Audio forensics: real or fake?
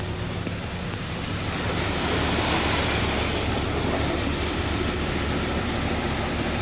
real